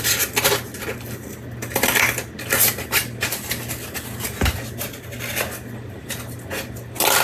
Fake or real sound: real